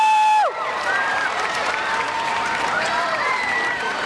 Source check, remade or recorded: remade